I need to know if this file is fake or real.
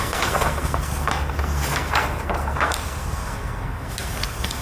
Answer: fake